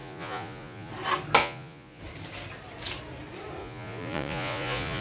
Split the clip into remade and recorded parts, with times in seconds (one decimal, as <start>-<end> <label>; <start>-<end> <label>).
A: 0.0-0.9 remade; 0.9-1.4 recorded; 1.4-2.0 remade; 2.0-3.6 recorded; 3.6-5.0 remade